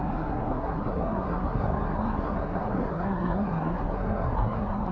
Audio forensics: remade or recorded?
remade